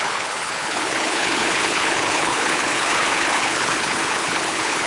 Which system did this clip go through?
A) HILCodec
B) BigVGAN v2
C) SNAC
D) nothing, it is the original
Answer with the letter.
A